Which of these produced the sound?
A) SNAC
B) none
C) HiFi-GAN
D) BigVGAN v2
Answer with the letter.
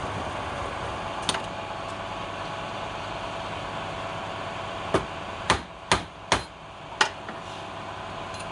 B